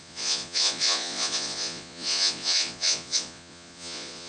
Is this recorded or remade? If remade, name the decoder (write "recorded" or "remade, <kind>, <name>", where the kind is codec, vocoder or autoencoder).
remade, vocoder, Vocos